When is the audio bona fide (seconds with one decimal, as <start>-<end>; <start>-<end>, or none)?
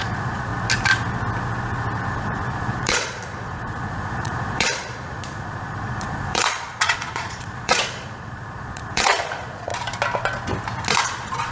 0.5-2.1; 9.7-11.0